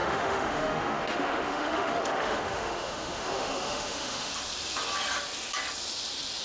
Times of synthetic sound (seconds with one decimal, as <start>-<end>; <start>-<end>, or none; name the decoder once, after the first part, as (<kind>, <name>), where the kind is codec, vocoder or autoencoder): 0.0-4.3 (autoencoder, DAC-VAE)

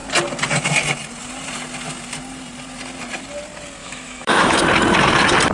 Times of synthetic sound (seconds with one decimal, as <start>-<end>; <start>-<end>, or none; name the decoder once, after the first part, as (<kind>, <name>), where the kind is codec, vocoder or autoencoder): 3.8-4.6 (autoencoder, DAC-VAE)

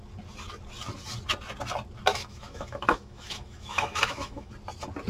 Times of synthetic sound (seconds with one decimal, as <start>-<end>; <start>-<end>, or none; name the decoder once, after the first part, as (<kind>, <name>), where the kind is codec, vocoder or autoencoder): 2.1-4.5 (autoencoder, DAC-VAE)

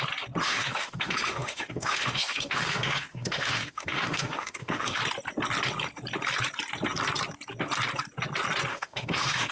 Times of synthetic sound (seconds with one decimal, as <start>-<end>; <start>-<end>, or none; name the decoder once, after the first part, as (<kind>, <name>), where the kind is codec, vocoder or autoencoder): 0.4-5.0 (autoencoder, DAC-VAE); 8.7-9.5